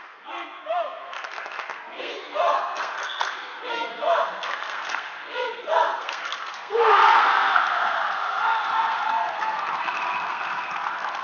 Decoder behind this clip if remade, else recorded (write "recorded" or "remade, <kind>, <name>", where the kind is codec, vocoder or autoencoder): remade, codec, SNAC